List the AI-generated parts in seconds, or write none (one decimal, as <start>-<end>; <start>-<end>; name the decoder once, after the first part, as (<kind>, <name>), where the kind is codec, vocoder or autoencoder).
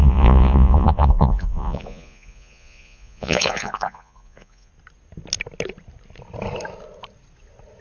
0.0-4.7 (vocoder, Vocos)